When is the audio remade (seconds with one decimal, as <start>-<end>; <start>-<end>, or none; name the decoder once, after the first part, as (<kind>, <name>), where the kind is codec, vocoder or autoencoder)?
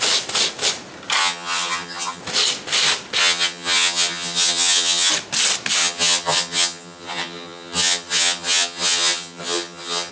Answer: 1.2-2.2 (vocoder, HiFi-GAN); 3.2-5.1; 5.8-10.1